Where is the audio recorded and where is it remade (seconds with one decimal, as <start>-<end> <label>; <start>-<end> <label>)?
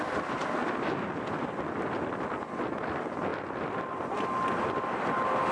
0.0-5.5 recorded